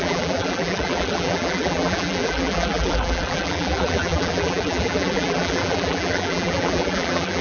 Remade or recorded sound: remade